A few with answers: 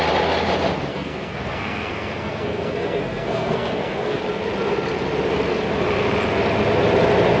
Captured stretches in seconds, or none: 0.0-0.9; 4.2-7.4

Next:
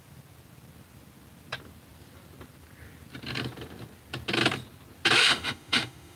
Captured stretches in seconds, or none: 0.0-5.2

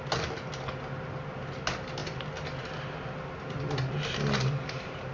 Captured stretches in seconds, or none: 0.0-5.1

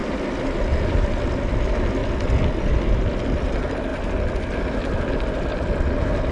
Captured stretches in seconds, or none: 1.3-3.9; 4.8-6.3